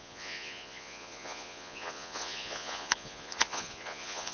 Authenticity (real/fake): fake